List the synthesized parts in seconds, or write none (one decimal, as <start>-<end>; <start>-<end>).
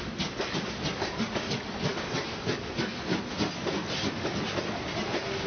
none